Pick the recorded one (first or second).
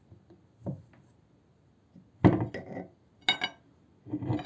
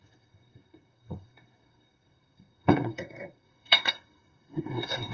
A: first